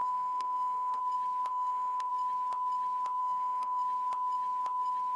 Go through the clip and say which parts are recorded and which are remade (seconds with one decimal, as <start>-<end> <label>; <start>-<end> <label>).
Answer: 0.0-1.0 remade; 1.0-1.5 recorded; 1.5-2.1 remade; 2.1-3.2 recorded; 3.2-3.8 remade; 3.8-5.2 recorded

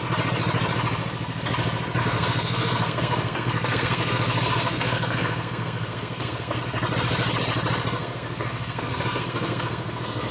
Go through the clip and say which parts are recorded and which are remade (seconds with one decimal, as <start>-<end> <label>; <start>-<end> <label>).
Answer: 0.0-2.0 recorded; 2.0-6.6 remade; 6.6-8.0 recorded; 8.0-10.3 remade

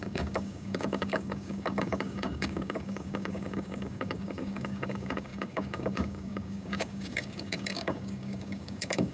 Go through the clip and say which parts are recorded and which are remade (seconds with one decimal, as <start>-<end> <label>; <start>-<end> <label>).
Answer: 0.0-9.1 remade

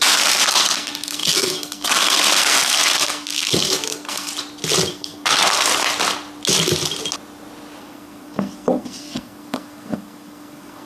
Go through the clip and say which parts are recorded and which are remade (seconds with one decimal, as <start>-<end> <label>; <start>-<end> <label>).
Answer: 0.0-4.3 remade; 4.3-4.9 recorded; 4.9-5.7 remade; 5.7-7.8 recorded; 7.8-10.9 remade

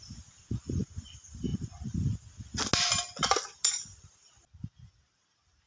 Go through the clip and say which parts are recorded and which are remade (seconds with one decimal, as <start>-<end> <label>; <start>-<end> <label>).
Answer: 0.0-5.7 recorded

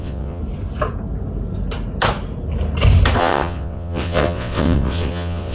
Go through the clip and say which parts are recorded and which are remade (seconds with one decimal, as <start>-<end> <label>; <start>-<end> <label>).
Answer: 0.0-0.4 remade; 0.4-3.2 recorded; 3.2-5.5 remade